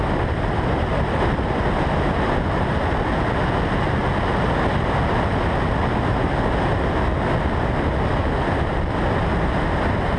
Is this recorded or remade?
recorded